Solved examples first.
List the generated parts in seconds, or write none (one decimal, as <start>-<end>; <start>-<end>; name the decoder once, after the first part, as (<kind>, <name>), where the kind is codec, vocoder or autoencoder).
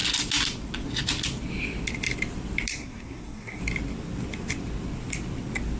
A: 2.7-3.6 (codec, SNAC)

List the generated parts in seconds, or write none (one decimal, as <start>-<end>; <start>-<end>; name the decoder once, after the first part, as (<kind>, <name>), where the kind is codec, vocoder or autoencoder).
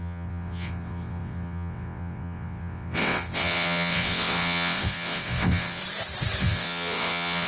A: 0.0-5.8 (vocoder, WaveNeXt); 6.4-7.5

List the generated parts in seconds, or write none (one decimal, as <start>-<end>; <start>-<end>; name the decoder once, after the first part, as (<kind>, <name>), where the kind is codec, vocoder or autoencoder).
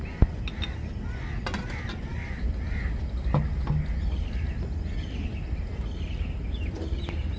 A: none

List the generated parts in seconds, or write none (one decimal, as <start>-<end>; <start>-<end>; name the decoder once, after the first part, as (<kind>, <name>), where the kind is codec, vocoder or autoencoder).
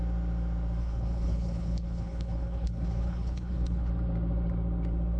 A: 0.8-3.9 (codec, HILCodec)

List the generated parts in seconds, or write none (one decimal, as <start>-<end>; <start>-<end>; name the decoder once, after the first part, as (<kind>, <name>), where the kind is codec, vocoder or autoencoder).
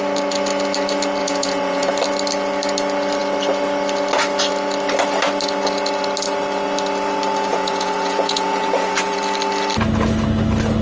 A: 1.2-1.9 (vocoder, Vocos); 7.5-9.2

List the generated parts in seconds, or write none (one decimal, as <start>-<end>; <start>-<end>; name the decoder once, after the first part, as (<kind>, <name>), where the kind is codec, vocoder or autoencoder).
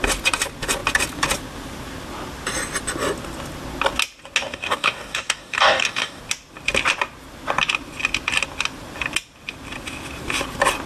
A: 4.4-6.2 (codec, DAC)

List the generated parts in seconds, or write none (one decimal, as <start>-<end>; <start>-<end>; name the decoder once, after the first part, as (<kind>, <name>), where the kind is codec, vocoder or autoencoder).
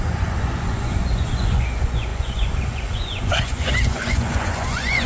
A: 0.0-5.1 (vocoder, Vocos)